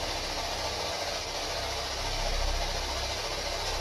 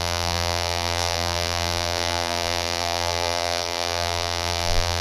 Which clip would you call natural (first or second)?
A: first